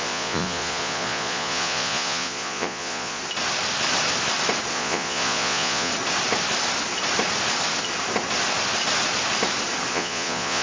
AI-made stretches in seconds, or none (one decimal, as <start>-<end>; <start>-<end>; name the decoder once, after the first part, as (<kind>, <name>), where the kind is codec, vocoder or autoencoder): 0.0-3.2 (vocoder, Vocos); 4.7-5.9; 9.9-10.6